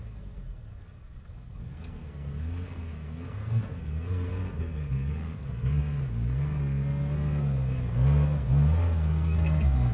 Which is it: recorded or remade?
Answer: remade